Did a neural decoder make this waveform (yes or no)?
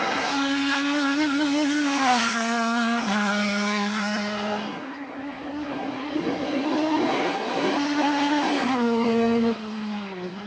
yes